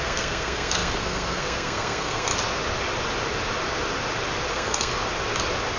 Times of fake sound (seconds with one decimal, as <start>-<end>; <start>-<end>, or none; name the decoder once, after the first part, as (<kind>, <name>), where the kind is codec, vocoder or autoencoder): 0.0-2.3 (codec, SNAC); 4.5-4.9